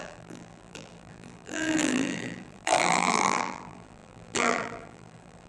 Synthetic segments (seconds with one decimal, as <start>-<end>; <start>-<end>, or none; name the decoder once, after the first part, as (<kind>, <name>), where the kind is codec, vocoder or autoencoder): 0.0-5.5 (vocoder, BigVGAN v2)